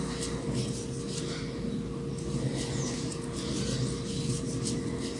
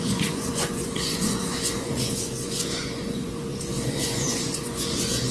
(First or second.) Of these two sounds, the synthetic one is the second